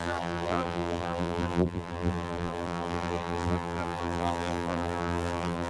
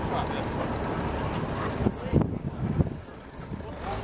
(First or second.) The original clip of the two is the second